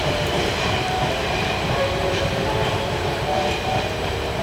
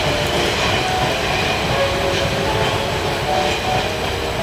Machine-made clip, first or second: first